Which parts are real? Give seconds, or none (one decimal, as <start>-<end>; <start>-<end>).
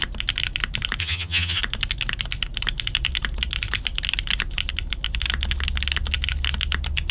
0.0-1.0; 1.6-7.1